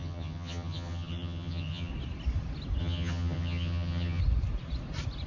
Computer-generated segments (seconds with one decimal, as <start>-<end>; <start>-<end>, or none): 0.0-1.9; 2.8-4.2